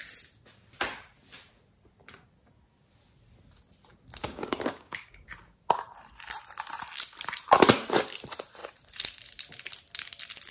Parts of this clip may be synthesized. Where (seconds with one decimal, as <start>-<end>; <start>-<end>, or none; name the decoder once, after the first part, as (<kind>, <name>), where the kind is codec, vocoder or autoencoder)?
4.2-5.1 (codec, DAC)